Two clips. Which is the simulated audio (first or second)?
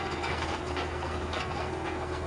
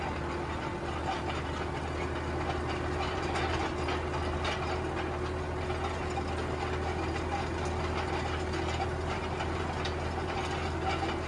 first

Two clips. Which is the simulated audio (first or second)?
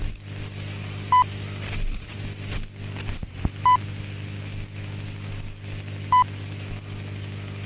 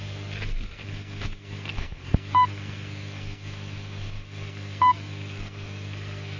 second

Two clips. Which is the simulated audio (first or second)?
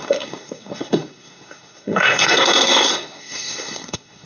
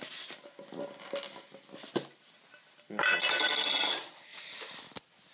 first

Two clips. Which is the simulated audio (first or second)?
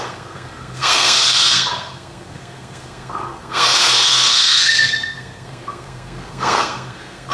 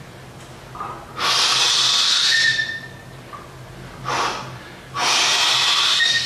first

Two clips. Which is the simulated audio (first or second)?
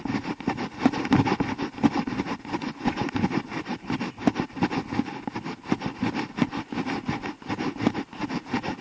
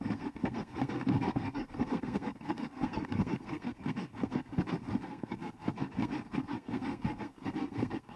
second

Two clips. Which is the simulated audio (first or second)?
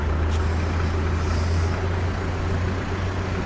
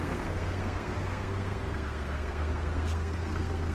second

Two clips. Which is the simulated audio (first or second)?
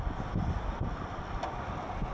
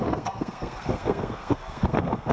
second